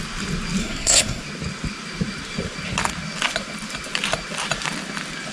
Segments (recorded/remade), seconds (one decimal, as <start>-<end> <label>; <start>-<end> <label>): 0.0-0.6 recorded; 0.6-1.2 remade; 1.2-5.3 recorded